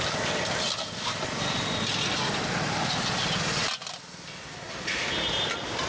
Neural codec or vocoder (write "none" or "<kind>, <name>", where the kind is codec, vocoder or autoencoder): none